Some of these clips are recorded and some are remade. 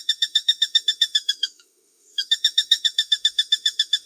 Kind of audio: remade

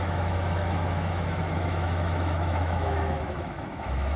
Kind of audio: remade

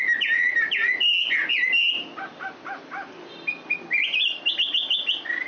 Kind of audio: recorded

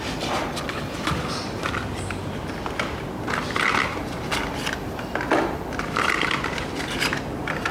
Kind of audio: recorded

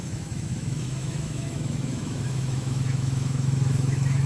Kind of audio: remade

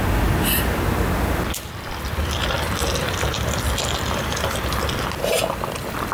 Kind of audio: recorded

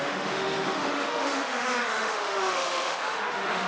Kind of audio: remade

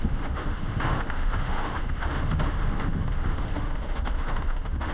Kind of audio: remade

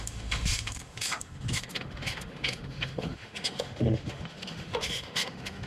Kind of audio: remade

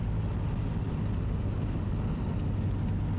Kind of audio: recorded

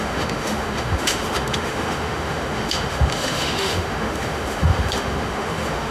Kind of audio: remade